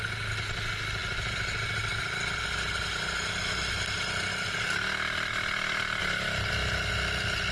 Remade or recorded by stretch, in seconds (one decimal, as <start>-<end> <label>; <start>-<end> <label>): 0.0-7.5 recorded